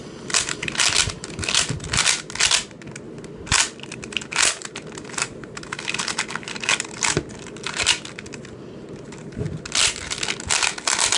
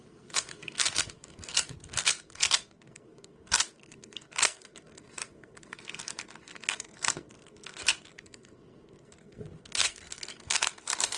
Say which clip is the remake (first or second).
second